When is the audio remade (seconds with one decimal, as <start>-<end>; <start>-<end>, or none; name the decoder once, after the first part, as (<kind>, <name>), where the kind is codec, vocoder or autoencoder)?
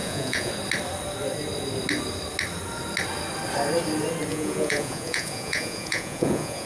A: 0.0-0.5 (vocoder, Vocos); 4.3-6.7